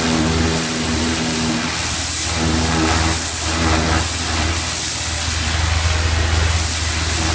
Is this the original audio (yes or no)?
yes